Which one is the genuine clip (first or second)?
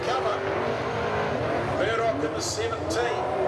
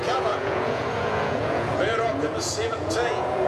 first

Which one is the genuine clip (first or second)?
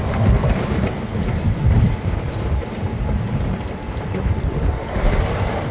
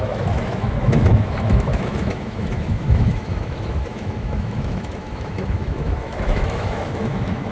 first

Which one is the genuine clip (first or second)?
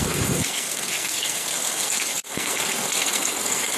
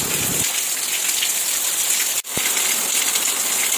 second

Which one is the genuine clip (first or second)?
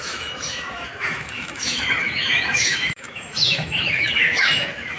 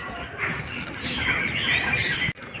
second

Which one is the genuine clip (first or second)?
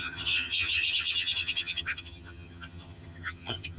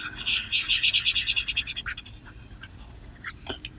second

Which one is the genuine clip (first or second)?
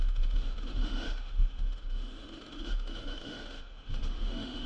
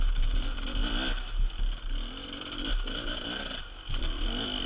second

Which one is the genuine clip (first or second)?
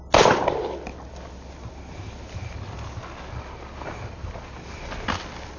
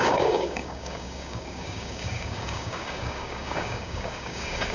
first